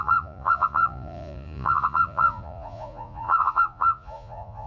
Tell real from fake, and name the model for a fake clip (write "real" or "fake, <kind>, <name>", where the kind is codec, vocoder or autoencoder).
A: fake, vocoder, Vocos